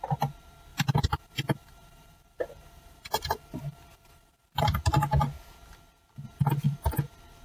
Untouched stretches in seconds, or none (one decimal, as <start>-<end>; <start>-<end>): 0.0-0.7; 4.6-7.4